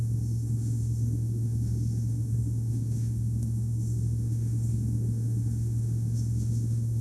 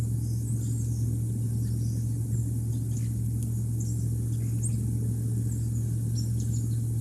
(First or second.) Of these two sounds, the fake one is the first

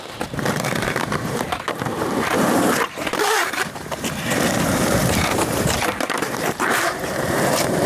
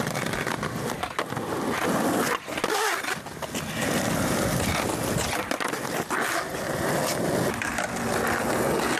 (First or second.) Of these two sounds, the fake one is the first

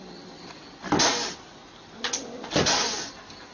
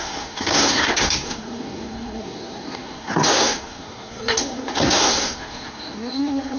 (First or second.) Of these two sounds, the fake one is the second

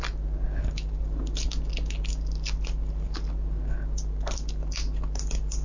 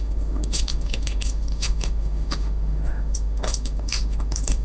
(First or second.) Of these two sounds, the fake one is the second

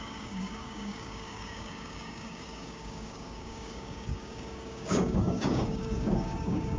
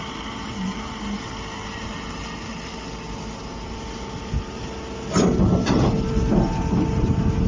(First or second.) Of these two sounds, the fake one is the first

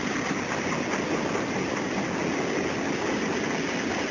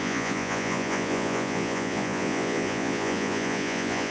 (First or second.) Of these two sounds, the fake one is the second